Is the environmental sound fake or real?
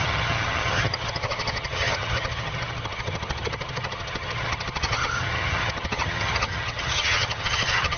fake